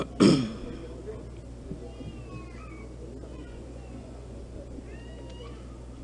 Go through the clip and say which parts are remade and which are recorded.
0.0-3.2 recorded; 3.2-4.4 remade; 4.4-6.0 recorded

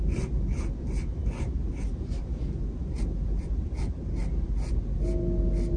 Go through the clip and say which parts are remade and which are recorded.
0.0-5.8 recorded